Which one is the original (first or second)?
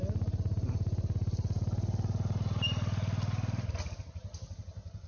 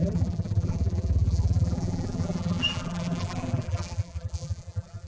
first